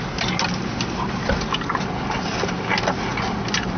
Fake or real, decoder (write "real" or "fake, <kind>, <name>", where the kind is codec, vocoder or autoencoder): real